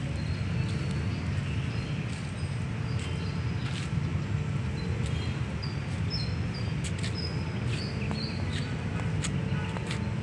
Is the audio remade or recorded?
recorded